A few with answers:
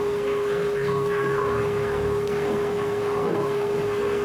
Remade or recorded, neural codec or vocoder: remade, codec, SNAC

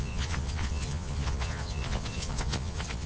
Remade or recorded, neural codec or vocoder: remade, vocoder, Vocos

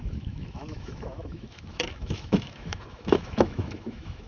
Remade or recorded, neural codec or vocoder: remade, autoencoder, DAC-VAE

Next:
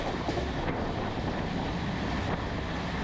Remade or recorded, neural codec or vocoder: recorded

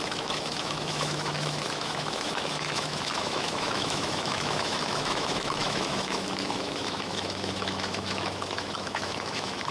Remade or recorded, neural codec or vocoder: remade, autoencoder, DAC-VAE